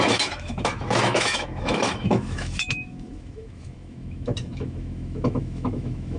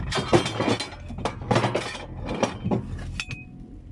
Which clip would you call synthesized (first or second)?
first